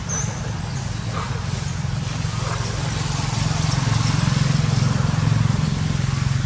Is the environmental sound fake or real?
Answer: real